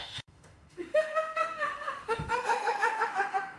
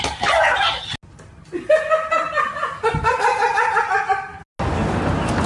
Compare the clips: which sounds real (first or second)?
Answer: second